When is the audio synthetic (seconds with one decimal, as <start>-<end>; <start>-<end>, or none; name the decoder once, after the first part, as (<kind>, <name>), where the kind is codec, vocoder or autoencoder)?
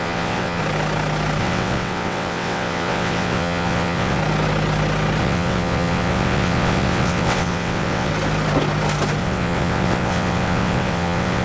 0.0-0.6 (vocoder, WaveNeXt); 1.4-4.2; 5.2-8.1; 9.2-11.4